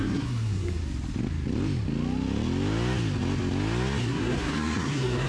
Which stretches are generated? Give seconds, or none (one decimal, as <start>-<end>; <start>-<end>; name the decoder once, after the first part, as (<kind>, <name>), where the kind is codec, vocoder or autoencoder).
0.0-0.8 (codec, SNAC); 4.0-5.3